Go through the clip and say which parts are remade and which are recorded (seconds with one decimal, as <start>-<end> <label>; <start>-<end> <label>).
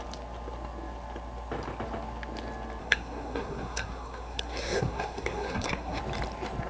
0.0-2.8 recorded; 2.8-6.0 remade; 6.0-6.7 recorded